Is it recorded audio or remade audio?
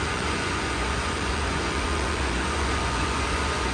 remade